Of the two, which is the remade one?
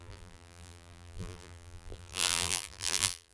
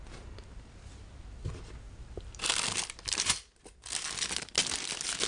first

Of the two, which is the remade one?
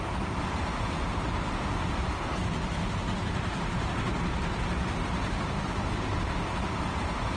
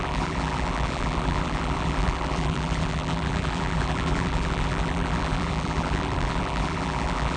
second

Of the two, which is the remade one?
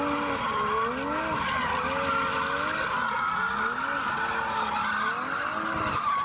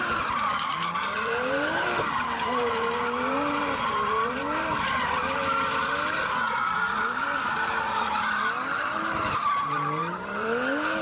second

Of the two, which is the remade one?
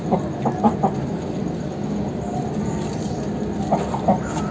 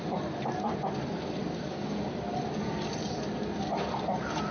second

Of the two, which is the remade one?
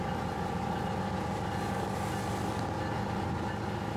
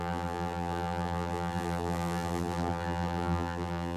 second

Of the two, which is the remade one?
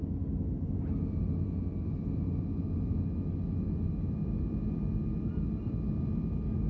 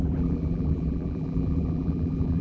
second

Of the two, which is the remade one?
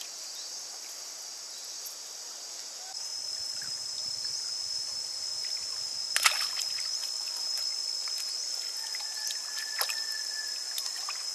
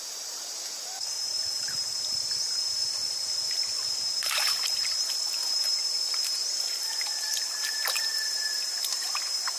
second